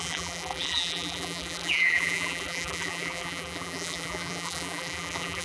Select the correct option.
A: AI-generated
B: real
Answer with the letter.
A